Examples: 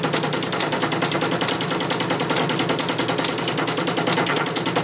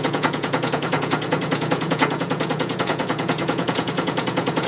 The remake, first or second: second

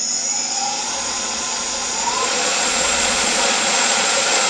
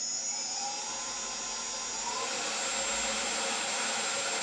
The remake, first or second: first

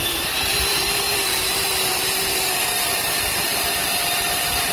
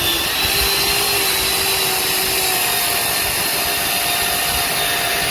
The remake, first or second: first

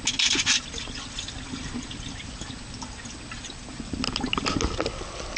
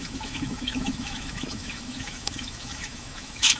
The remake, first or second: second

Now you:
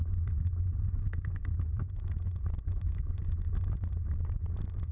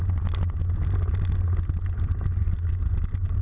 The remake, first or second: first